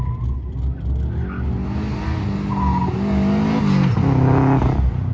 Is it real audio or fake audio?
real